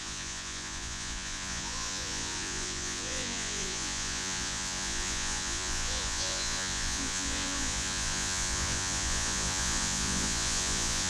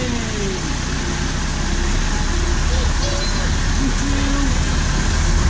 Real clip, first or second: second